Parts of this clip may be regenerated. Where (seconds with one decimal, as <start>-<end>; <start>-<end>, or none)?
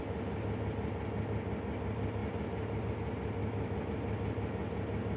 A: 3.4-3.9